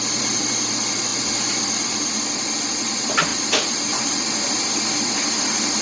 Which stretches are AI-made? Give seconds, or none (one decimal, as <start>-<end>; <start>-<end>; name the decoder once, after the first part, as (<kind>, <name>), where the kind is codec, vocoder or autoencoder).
3.3-4.4 (vocoder, BigVGAN v2)